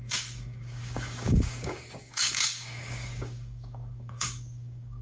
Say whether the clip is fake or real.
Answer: fake